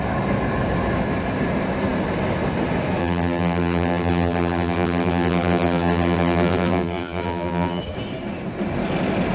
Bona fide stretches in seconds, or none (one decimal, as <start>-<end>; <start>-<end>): 0.0-3.0; 7.8-9.3

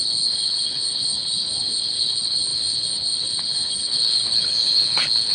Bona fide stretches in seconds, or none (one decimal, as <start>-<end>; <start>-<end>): none

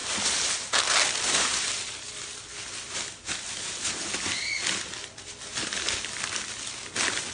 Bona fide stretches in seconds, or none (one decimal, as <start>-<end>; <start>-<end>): 0.0-7.3